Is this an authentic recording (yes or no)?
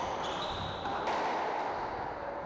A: yes